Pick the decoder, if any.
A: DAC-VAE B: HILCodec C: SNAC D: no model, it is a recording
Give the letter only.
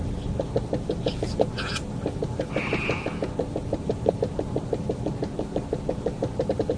D